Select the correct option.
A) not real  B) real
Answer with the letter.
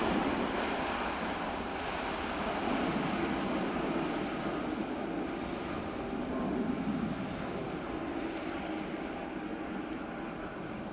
B